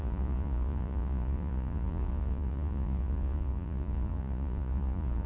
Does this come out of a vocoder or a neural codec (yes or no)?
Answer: yes